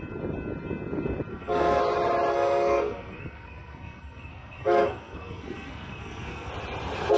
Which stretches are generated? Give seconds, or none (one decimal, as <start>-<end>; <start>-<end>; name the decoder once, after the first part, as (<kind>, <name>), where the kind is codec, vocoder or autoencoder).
1.3-1.8 (codec, SNAC); 2.3-6.5